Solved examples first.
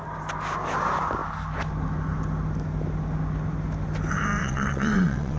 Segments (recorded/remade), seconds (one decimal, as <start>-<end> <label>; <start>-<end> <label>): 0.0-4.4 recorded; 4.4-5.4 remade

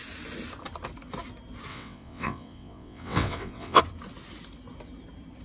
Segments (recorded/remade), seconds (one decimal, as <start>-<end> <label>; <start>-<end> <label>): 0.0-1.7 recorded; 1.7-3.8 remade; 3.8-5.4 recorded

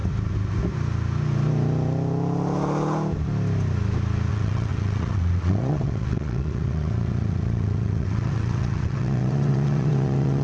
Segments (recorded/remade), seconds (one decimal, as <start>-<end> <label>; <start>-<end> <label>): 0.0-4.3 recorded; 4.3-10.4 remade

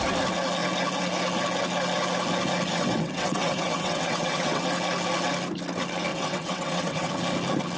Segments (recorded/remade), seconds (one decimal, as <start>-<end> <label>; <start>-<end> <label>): 0.0-2.7 recorded; 2.7-4.6 remade; 4.6-6.1 recorded; 6.1-7.1 remade; 7.1-7.8 recorded

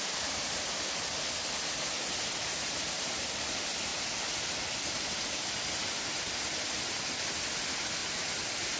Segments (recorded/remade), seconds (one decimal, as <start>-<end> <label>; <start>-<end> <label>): 0.0-8.8 recorded

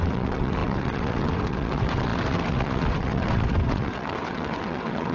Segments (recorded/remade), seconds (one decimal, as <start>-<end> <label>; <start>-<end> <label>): 0.0-5.1 remade